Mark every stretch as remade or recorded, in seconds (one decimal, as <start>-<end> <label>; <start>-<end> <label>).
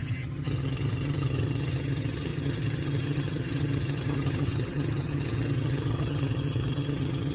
0.0-7.3 remade